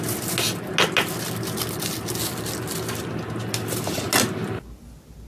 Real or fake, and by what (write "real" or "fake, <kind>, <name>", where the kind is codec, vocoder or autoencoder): real